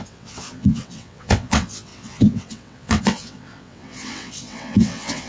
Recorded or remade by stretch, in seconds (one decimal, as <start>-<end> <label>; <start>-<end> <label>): 0.0-5.3 remade